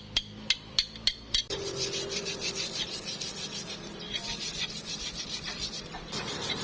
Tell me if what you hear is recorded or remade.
remade